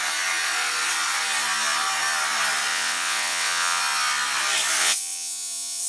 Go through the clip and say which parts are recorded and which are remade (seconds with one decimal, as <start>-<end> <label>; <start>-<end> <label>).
0.0-2.7 recorded; 2.7-3.8 remade; 3.8-4.8 recorded; 4.8-5.9 remade